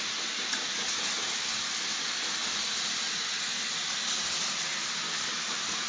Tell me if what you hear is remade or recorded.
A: recorded